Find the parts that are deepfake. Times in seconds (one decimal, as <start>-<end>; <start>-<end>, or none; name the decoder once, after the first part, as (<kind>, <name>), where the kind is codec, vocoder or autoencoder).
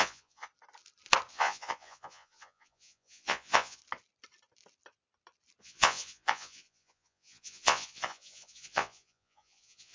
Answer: 0.0-0.5 (vocoder, Vocos); 1.3-3.8; 5.6-9.9